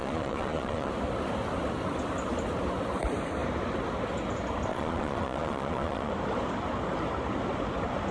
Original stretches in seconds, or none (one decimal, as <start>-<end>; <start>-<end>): 0.9-4.7; 6.1-8.1